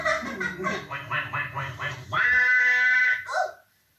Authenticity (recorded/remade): recorded